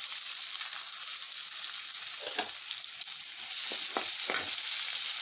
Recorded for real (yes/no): yes